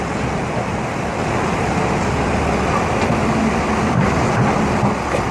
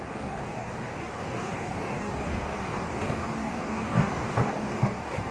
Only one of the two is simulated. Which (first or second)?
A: second